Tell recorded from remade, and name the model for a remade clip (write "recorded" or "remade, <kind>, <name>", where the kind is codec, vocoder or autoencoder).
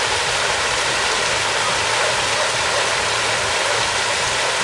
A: recorded